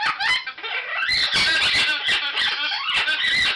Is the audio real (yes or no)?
yes